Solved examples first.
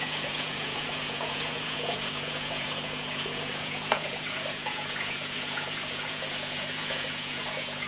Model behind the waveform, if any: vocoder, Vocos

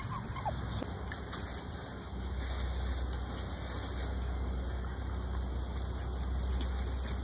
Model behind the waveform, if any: none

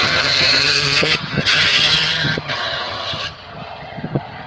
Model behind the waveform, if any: vocoder, HiFi-GAN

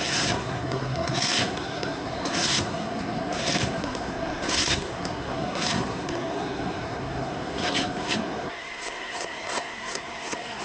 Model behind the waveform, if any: codec, SNAC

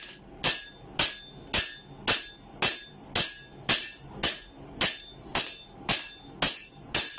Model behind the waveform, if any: none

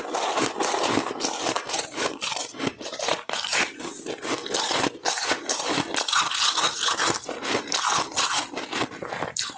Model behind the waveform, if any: none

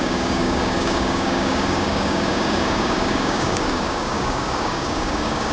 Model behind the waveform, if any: codec, DAC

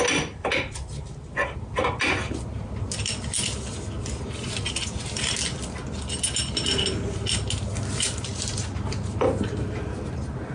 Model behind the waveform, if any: none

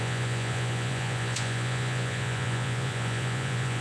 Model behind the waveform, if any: vocoder, Vocos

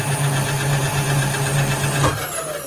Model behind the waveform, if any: none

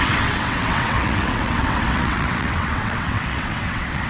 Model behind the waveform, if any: vocoder, WaveNeXt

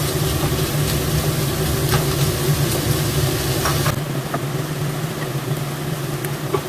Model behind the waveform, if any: none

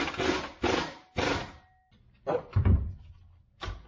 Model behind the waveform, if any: none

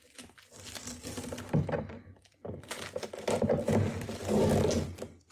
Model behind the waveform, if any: none